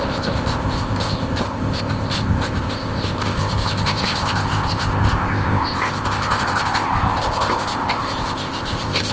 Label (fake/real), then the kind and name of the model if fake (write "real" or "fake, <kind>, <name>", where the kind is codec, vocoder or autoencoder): fake, codec, ZipCodec